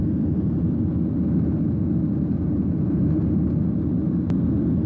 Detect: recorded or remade recorded